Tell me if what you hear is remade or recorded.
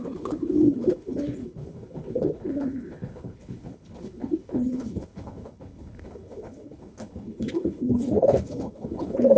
remade